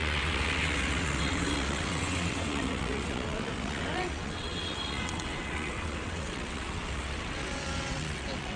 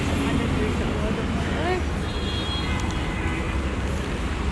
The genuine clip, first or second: second